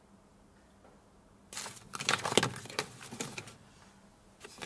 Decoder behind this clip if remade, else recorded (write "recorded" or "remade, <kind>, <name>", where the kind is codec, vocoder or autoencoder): recorded